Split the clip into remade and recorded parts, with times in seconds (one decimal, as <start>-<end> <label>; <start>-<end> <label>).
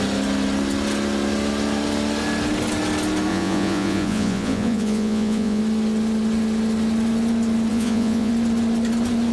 0.0-3.3 recorded; 3.3-5.6 remade; 5.6-7.7 recorded; 7.7-8.3 remade; 8.3-9.3 recorded